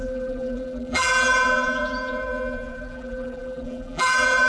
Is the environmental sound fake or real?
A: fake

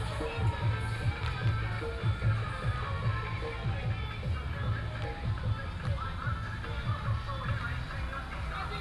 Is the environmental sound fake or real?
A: real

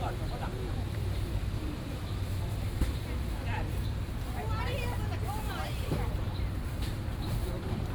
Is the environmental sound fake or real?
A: fake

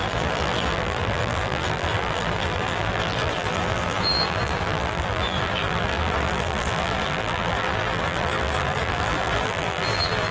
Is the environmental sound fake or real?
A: fake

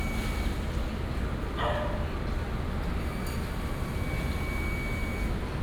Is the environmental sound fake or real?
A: real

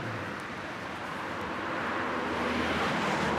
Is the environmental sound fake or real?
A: fake